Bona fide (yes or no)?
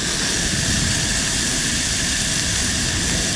yes